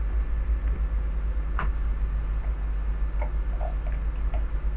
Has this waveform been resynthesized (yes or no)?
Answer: no